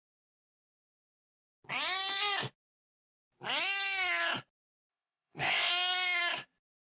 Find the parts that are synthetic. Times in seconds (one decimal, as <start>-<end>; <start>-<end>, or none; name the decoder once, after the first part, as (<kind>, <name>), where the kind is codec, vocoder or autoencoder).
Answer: 4.9-5.7 (codec, ZipCodec)